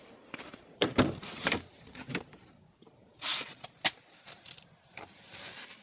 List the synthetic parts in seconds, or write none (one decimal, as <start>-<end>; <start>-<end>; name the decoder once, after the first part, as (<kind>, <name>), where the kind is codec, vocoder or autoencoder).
0.0-3.3 (vocoder, BigVGAN v2)